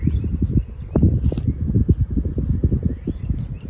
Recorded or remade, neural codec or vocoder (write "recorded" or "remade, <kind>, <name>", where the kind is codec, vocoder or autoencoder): recorded